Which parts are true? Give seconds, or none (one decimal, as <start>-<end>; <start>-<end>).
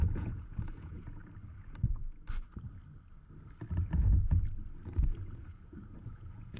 1.2-5.2